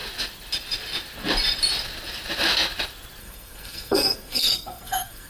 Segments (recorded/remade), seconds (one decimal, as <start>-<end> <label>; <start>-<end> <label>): 0.0-3.2 recorded; 3.2-5.3 remade

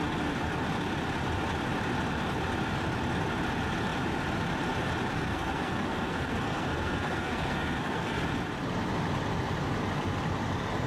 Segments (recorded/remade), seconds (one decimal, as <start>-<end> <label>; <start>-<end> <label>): 0.0-5.1 recorded; 5.1-8.2 remade; 8.2-10.9 recorded

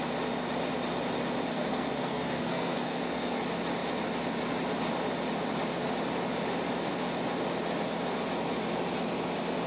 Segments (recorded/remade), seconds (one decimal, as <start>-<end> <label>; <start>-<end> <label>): 0.0-1.5 recorded; 1.5-3.4 remade; 3.4-9.7 recorded

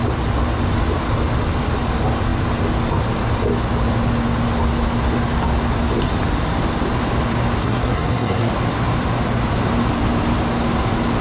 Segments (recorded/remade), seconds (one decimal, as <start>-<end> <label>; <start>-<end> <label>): 0.0-7.6 recorded; 7.6-8.5 remade; 8.5-11.2 recorded

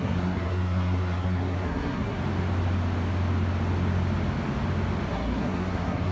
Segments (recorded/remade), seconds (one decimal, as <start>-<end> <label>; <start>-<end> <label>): 0.0-2.2 remade; 2.2-5.1 recorded; 5.1-6.1 remade

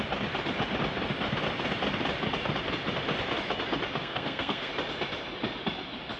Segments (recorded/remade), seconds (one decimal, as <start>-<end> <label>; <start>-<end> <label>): 0.0-4.0 recorded; 4.0-4.7 remade; 4.7-6.2 recorded